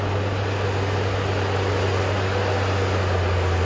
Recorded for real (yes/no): yes